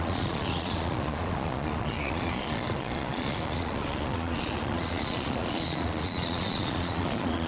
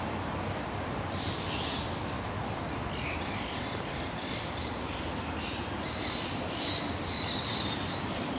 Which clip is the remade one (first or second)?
first